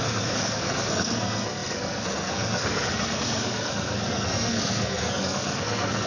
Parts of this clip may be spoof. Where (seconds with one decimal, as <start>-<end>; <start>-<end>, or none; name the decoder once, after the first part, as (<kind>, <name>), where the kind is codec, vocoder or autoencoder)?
0.0-6.1 (codec, SNAC)